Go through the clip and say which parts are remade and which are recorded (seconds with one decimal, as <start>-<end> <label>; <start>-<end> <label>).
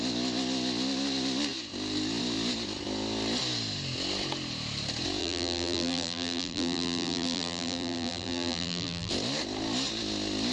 0.0-5.2 recorded; 5.2-9.1 remade; 9.1-10.5 recorded